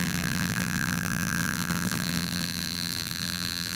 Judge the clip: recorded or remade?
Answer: remade